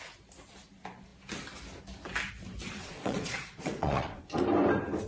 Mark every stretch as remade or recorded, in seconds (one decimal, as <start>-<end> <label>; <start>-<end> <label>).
0.0-2.8 recorded; 2.8-4.4 remade; 4.4-5.1 recorded